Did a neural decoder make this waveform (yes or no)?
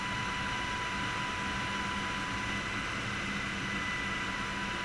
no